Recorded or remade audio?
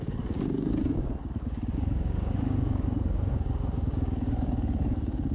remade